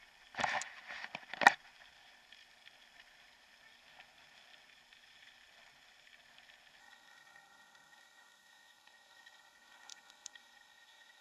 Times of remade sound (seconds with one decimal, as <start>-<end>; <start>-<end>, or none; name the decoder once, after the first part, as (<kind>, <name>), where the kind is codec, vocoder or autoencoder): 6.8-11.2 (codec, SNAC)